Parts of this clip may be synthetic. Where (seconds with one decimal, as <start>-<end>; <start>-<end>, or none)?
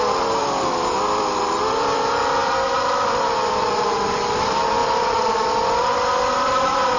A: 0.0-7.0